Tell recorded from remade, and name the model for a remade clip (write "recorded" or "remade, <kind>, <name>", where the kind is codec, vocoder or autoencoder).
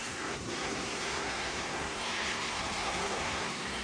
remade, codec, SNAC